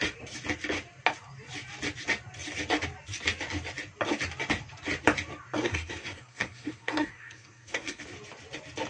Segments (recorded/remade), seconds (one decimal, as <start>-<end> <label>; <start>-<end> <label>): 0.0-5.6 recorded; 5.6-8.0 remade; 8.0-8.9 recorded